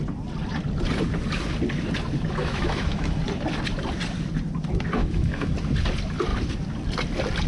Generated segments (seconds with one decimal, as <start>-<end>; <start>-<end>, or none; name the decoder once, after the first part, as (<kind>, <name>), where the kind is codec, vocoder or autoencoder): 2.4-3.2 (autoencoder, DAC-VAE); 5.0-5.5